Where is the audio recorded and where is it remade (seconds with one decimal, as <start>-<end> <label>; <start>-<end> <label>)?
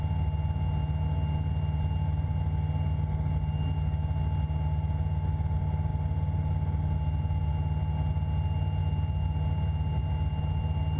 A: 0.0-11.0 recorded